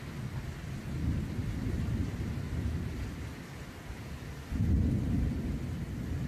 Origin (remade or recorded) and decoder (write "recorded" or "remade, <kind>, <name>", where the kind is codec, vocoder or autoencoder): recorded